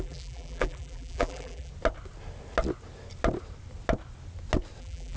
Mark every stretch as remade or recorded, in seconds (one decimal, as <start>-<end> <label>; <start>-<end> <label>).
0.0-1.7 remade; 1.7-4.8 recorded; 4.8-5.2 remade